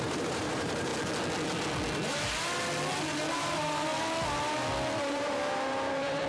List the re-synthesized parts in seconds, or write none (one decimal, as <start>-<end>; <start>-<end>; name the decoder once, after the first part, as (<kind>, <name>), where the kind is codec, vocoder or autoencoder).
0.0-0.9 (vocoder, BigVGAN v2); 3.3-3.9; 5.1-6.3